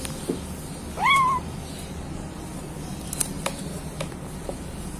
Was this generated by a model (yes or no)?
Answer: no